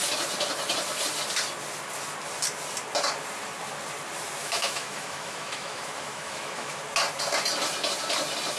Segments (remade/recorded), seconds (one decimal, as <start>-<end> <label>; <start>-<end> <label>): 0.0-4.4 recorded; 4.4-6.8 remade; 6.8-8.6 recorded